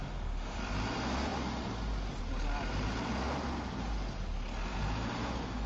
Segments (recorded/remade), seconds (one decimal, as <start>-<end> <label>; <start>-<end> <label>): 0.0-0.6 remade; 0.6-5.7 recorded